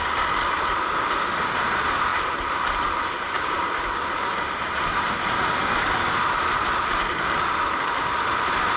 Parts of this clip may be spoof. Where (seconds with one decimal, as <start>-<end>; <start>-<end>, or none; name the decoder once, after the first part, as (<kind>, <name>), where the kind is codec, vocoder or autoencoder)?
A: none